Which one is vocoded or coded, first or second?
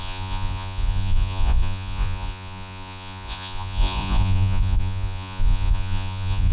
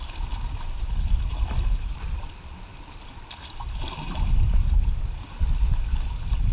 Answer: first